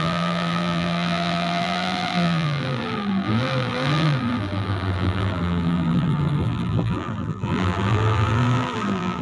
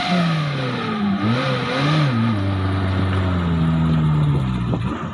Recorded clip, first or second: second